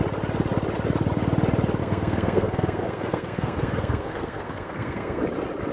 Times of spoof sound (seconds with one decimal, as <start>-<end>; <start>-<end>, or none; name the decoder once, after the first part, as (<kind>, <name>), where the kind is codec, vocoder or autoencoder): 1.8-5.2 (codec, SNAC)